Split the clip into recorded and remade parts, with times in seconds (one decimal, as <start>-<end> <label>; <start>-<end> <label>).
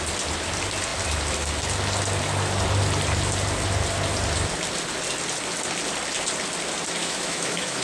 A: 0.0-7.0 recorded; 7.0-7.8 remade